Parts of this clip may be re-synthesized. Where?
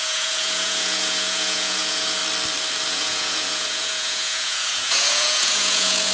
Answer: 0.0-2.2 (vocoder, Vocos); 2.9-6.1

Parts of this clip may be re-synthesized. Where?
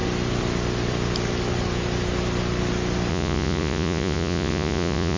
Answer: 3.1-5.2 (vocoder, Vocos)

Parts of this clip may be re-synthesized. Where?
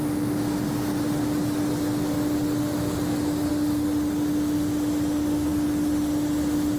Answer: none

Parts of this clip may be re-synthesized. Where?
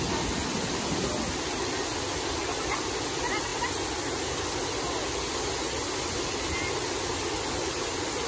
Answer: none